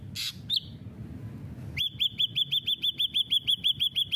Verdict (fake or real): real